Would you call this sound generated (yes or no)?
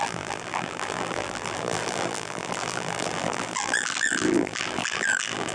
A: yes